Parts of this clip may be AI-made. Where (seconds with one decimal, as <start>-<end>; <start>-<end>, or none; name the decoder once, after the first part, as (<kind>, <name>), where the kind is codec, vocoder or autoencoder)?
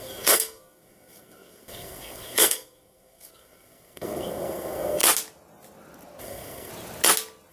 0.0-5.0 (codec, SNAC); 6.2-6.7